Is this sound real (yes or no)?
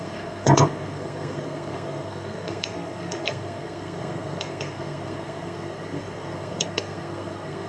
no